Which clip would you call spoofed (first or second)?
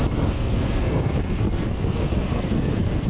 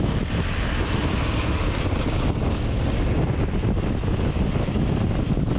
first